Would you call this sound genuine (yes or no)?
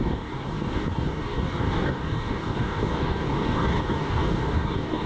no